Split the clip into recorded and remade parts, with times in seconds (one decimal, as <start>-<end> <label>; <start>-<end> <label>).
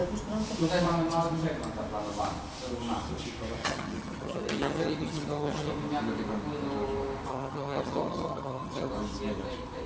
0.0-3.6 recorded; 3.6-5.7 remade; 5.7-7.3 recorded; 7.3-8.9 remade; 8.9-9.9 recorded